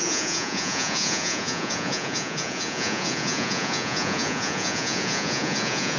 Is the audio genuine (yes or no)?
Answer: no